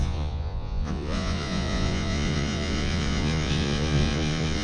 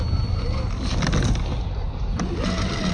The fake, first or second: first